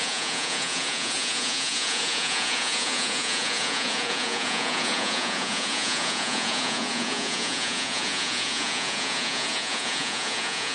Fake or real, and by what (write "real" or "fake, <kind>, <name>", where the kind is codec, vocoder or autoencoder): fake, vocoder, Vocos